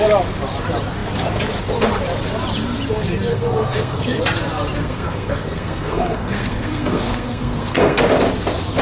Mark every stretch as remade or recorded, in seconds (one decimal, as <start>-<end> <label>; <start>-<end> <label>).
0.0-3.3 recorded; 3.3-4.2 remade; 4.2-4.8 recorded; 4.8-8.0 remade; 8.0-8.8 recorded